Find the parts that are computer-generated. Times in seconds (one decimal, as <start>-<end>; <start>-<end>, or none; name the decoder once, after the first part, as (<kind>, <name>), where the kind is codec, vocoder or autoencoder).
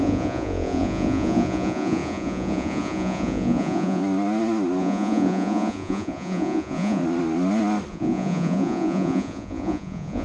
0.0-4.0 (vocoder, Vocos); 4.8-7.0; 7.9-10.2